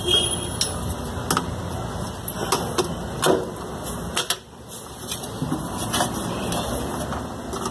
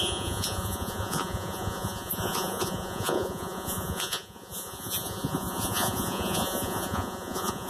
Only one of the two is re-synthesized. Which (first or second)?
second